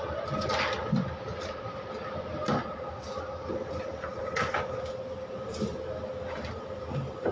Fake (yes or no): no